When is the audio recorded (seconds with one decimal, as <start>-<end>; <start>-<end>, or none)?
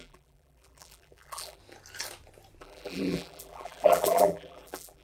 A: 1.6-2.6